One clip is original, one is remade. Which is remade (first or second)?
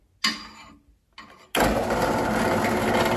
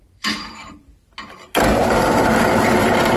second